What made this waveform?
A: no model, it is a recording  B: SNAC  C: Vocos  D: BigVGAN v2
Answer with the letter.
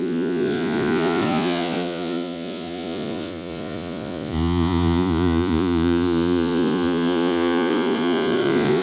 C